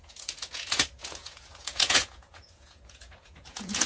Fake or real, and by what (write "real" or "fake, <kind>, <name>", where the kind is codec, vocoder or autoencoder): fake, vocoder, Vocos